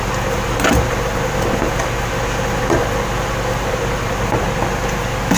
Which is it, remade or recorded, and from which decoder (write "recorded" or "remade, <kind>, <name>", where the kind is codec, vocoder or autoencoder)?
recorded